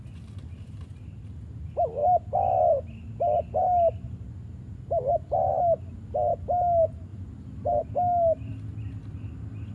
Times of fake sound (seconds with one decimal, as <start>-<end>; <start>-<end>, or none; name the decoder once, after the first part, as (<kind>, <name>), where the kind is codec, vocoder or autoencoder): 7.1-7.8 (vocoder, BigVGAN v2)